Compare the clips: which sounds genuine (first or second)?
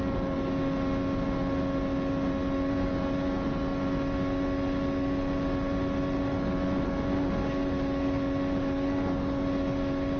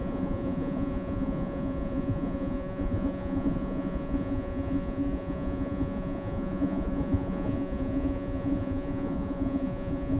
first